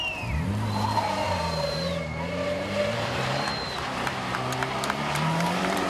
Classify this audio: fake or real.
fake